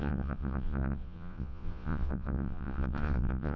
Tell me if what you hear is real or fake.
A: fake